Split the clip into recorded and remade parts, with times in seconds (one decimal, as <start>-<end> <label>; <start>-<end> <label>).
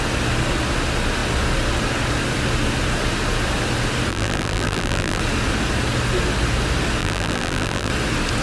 0.0-4.1 recorded; 4.1-5.2 remade; 5.2-7.0 recorded; 7.0-7.9 remade; 7.9-8.4 recorded